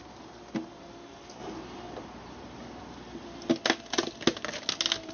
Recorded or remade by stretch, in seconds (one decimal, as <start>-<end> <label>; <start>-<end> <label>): 0.0-5.1 recorded